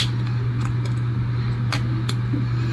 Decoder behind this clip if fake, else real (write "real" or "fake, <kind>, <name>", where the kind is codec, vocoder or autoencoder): real